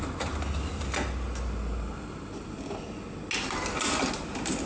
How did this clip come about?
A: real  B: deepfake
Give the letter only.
A